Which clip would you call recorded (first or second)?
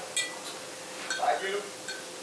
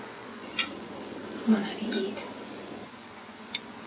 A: first